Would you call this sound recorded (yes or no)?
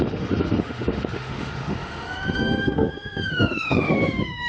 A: no